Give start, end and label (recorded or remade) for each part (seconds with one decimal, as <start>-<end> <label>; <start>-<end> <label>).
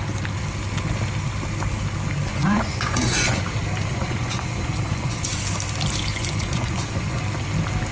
0.0-2.3 recorded; 2.3-3.4 remade; 3.4-3.9 recorded; 3.9-5.3 remade; 5.3-6.1 recorded; 6.1-7.2 remade; 7.2-7.9 recorded